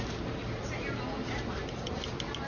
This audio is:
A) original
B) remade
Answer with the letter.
A